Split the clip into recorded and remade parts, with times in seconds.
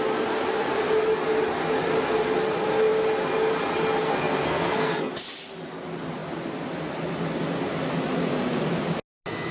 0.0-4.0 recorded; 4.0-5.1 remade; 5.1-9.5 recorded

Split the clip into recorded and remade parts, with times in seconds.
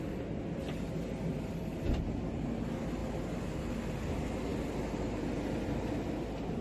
0.0-6.6 recorded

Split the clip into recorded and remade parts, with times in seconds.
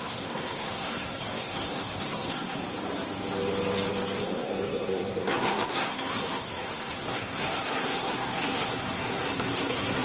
0.0-2.6 remade; 2.6-4.2 recorded; 4.2-10.0 remade